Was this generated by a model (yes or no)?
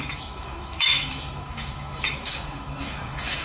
yes